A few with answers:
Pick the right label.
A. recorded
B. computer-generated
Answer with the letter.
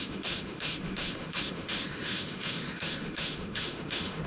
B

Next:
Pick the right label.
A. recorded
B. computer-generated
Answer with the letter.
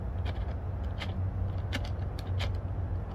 A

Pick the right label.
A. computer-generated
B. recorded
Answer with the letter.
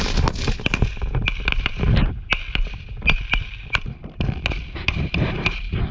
B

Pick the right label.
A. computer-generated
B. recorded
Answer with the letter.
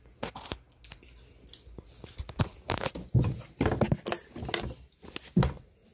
B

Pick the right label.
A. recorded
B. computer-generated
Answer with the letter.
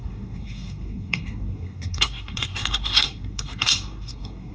B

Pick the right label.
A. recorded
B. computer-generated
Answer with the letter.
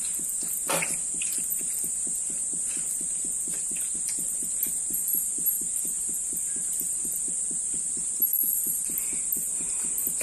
A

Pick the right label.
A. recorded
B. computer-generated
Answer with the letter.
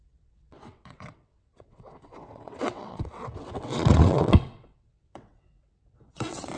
B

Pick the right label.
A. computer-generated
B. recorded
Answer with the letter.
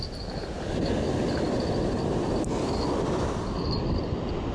B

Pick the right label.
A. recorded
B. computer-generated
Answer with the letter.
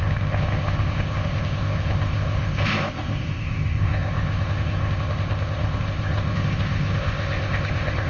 B